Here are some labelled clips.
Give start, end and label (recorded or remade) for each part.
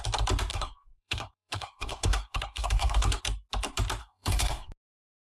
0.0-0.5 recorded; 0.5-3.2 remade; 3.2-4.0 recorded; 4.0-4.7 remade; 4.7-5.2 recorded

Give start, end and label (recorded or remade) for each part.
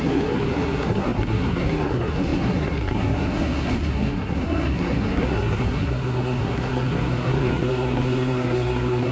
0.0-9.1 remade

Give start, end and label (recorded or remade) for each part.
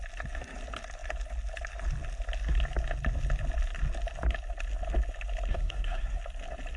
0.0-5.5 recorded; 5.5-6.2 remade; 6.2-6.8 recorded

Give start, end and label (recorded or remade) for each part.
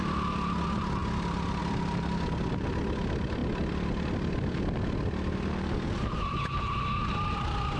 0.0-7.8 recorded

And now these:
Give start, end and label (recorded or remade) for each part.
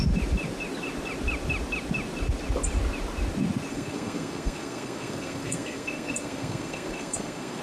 0.0-3.7 recorded; 3.7-7.6 remade